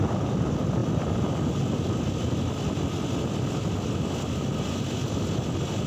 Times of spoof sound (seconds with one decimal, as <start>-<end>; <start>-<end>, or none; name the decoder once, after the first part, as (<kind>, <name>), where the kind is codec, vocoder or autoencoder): none